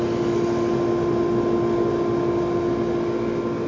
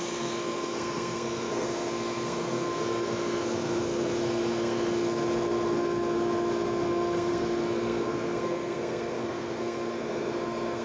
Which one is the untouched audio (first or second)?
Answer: first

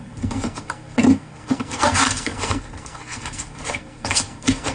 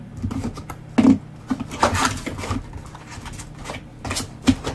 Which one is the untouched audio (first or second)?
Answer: second